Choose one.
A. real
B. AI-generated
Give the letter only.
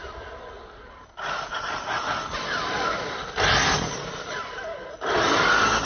A